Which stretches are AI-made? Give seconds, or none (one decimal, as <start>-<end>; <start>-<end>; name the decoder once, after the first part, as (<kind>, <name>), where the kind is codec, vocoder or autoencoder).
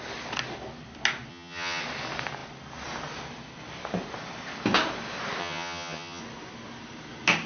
1.3-1.8 (vocoder, HiFi-GAN); 5.4-6.2